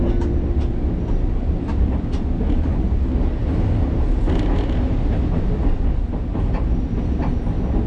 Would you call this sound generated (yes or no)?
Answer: no